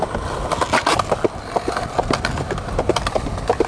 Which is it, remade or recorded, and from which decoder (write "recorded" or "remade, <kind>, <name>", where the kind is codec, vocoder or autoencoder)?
recorded